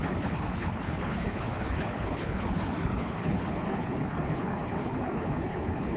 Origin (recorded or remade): remade